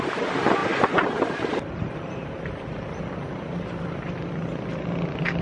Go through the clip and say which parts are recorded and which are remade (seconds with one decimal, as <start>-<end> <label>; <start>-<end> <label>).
0.0-0.6 recorded; 0.6-3.8 remade; 3.8-5.4 recorded